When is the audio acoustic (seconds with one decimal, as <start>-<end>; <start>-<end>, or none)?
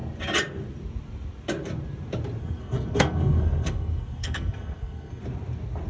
0.0-2.4; 5.2-5.9